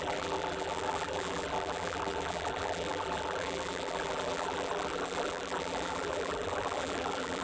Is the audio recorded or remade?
remade